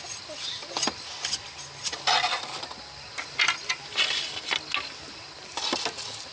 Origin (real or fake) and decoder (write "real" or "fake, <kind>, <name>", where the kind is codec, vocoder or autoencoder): real